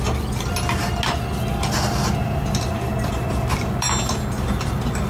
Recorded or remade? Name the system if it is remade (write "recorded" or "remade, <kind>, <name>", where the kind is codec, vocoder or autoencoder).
recorded